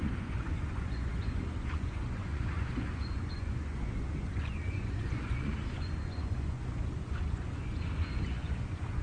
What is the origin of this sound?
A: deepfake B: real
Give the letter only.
A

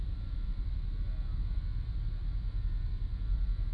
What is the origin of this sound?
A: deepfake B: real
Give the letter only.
B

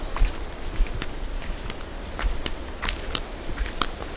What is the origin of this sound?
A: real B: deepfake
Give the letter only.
A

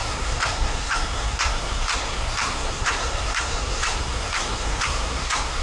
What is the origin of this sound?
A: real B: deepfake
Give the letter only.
B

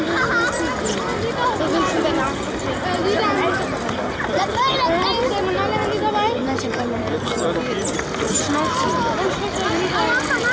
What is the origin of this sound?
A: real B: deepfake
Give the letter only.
A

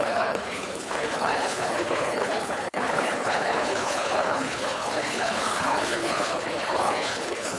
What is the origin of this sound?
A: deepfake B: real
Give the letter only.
A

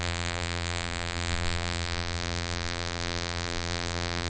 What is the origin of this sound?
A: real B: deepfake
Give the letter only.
B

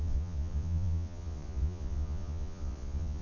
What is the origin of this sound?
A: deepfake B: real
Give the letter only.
A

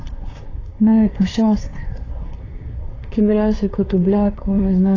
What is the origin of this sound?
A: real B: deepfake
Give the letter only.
B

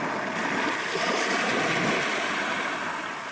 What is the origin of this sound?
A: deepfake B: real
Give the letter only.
B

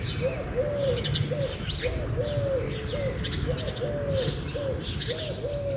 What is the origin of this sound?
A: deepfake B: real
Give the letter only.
B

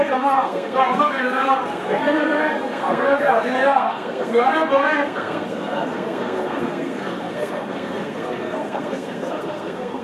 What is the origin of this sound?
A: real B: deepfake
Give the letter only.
B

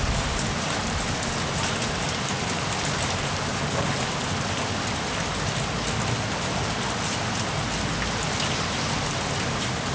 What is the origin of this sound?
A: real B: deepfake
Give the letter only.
A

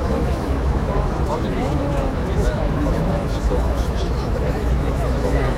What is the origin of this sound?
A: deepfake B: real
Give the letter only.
A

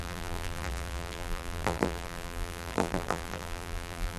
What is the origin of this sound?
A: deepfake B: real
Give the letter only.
A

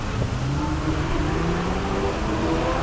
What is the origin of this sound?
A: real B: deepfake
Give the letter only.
A